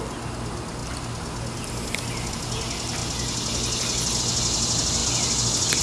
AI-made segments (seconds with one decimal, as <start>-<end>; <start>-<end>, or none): none